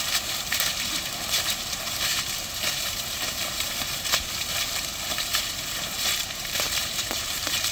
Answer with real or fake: fake